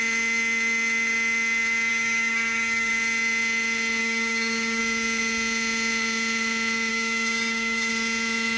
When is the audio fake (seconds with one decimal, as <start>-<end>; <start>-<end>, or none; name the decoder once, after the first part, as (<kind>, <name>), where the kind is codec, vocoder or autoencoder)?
1.9-2.9 (codec, DAC); 4.0-4.8; 6.9-7.9